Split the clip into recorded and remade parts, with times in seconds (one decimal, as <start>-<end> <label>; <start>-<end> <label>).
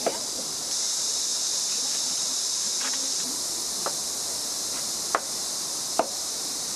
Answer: 0.0-1.3 remade; 1.3-5.4 recorded; 5.4-6.8 remade